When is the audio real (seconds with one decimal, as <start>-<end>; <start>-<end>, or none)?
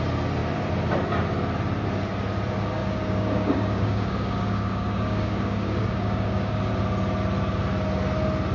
0.0-2.8; 6.7-8.5